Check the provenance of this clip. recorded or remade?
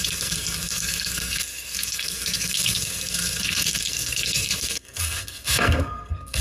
remade